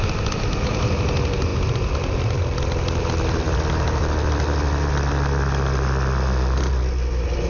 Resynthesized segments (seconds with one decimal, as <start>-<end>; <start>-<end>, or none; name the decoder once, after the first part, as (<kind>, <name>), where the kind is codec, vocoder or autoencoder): none